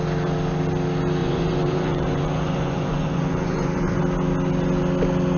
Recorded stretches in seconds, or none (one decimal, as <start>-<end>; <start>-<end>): 0.0-1.2; 4.0-5.4

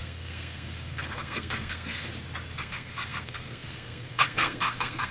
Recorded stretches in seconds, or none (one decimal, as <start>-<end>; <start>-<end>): 2.1-2.6

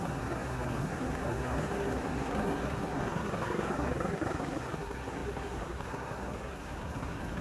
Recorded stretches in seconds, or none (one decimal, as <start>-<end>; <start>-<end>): none

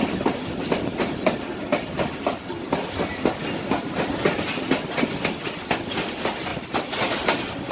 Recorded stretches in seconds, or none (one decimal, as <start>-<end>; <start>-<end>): 0.0-7.7

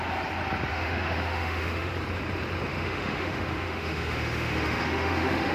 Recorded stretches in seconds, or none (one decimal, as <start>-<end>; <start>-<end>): 0.0-0.7; 1.9-2.7

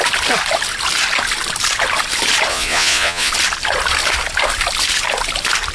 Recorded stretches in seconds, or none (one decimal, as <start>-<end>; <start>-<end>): 0.0-2.5; 3.3-5.7

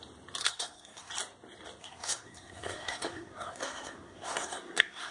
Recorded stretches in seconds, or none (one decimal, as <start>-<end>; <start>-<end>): 0.0-0.4; 1.1-1.8